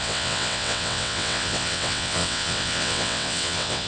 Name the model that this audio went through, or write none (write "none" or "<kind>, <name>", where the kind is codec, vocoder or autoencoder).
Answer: vocoder, WaveNeXt